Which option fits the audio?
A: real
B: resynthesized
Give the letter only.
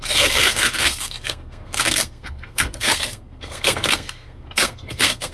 B